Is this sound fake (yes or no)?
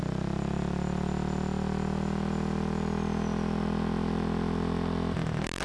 no